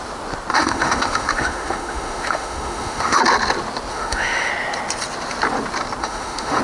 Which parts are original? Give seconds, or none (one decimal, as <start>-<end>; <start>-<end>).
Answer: 0.0-0.5; 3.2-3.9; 4.5-6.0